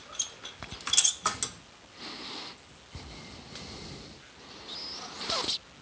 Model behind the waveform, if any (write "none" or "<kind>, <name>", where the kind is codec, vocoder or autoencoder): none